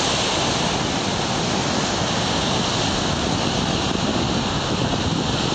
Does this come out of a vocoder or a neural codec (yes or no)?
no